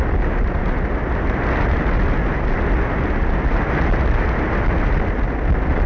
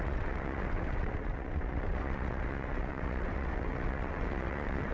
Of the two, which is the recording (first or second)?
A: first